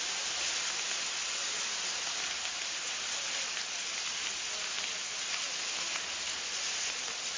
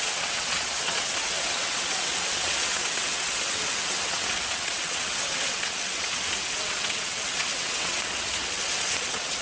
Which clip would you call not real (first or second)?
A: second